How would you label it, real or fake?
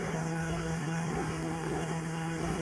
fake